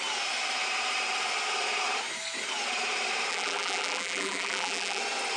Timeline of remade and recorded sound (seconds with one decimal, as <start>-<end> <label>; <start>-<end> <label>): 0.0-3.3 recorded; 3.3-5.0 remade; 5.0-5.4 recorded